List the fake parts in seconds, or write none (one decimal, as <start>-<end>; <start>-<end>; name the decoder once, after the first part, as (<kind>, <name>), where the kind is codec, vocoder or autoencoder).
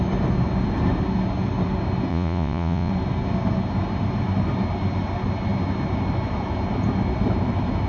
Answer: 2.1-2.9 (vocoder, Vocos)